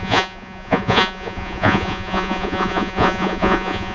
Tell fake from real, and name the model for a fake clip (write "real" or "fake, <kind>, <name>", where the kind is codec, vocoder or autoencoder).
fake, vocoder, Vocos